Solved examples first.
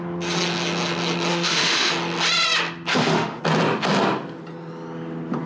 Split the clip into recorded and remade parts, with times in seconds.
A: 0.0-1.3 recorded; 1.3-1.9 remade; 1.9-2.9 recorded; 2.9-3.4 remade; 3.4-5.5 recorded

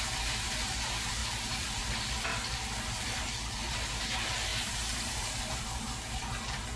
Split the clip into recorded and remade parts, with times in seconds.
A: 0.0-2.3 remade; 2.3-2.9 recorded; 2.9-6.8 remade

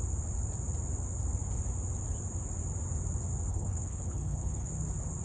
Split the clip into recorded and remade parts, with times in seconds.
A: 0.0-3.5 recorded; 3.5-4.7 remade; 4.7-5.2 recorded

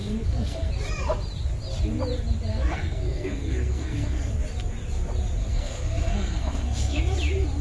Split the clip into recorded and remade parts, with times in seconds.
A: 0.0-0.7 remade; 0.7-2.5 recorded; 2.5-4.3 remade; 4.3-5.4 recorded; 5.4-7.0 remade; 7.0-7.6 recorded